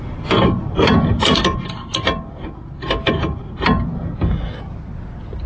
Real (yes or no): yes